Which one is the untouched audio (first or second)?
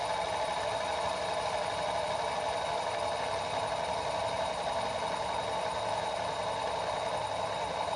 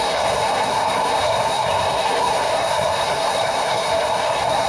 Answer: first